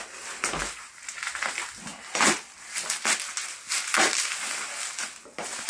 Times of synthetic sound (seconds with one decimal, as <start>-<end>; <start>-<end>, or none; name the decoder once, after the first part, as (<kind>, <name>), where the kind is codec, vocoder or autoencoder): none

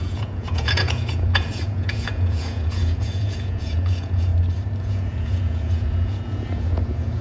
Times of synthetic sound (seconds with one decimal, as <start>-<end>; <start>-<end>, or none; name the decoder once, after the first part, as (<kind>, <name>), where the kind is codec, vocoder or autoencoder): 0.0-4.3 (vocoder, Vocos); 4.8-7.2

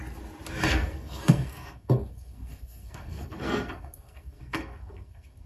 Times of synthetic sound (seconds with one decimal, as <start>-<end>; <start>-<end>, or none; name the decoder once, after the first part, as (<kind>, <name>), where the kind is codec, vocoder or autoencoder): 0.7-5.5 (codec, SNAC)